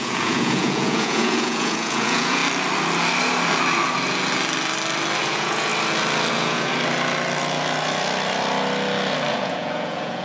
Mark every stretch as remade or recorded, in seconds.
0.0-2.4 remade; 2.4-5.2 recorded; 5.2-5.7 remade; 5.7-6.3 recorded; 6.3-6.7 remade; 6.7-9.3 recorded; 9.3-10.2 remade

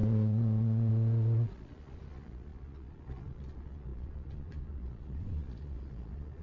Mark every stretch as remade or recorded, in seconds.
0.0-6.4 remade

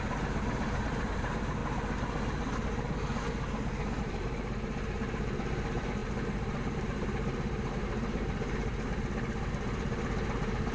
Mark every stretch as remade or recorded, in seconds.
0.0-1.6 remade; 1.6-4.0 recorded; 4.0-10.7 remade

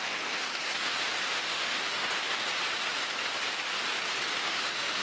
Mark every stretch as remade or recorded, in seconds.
0.0-0.5 remade; 0.5-1.4 recorded; 1.4-2.0 remade; 2.0-4.4 recorded; 4.4-5.0 remade

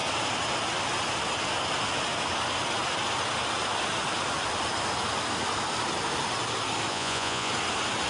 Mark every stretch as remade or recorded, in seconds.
0.0-6.9 recorded; 6.9-7.5 remade; 7.5-8.1 recorded

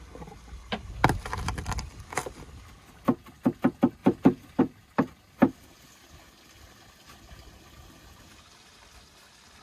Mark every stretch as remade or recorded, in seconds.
0.0-4.0 recorded; 4.0-4.6 remade; 4.6-9.6 recorded

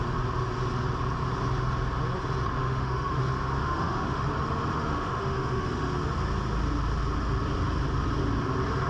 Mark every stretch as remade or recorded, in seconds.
0.0-2.6 recorded; 2.6-3.2 remade; 3.2-3.6 recorded; 3.6-4.2 remade; 4.2-4.7 recorded; 4.7-5.9 remade; 5.9-8.9 recorded